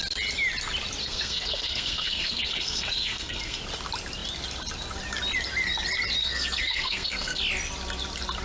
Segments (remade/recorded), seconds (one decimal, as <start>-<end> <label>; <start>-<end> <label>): 0.0-1.0 recorded; 1.0-3.6 remade; 3.6-6.2 recorded; 6.2-7.4 remade; 7.4-8.4 recorded